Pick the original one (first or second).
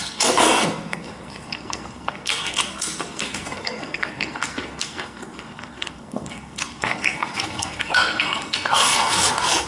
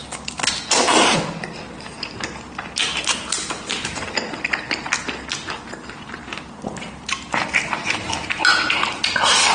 second